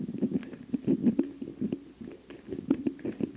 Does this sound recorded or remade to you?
recorded